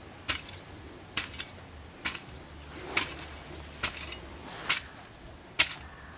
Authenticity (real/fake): real